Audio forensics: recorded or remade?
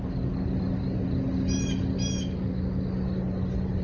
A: recorded